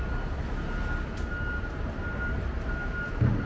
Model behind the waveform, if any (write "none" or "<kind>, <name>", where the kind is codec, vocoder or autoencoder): none